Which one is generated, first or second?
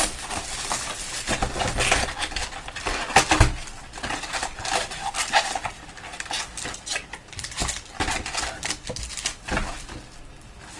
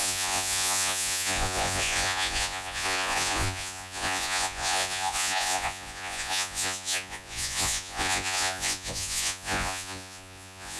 second